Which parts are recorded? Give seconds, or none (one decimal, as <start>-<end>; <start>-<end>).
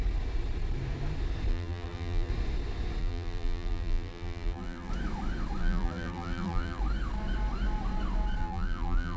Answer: 0.0-1.5; 2.3-3.0; 4.9-5.6; 6.8-8.4